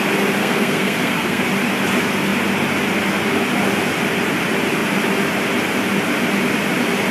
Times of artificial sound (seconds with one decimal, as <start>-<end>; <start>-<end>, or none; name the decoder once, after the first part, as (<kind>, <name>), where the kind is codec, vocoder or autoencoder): 0.4-1.4 (codec, SNAC)